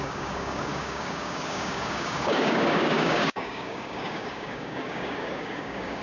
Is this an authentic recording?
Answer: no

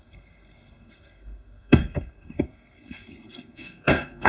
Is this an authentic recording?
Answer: no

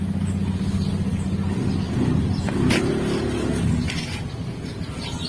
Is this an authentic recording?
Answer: yes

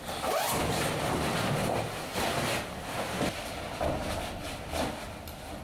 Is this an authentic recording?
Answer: yes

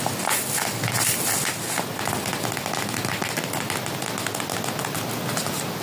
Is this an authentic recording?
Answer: yes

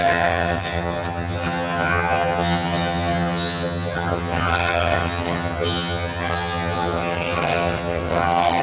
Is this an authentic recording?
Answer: no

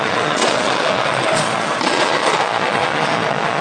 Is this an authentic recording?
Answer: no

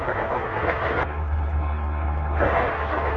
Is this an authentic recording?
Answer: no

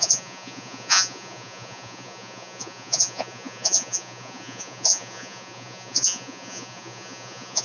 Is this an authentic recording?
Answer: no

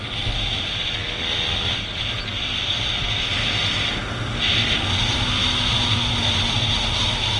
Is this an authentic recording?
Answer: yes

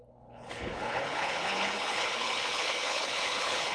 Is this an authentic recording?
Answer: no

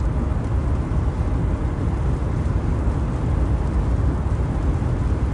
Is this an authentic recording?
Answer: yes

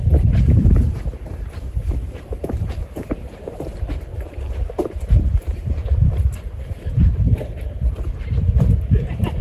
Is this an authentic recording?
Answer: no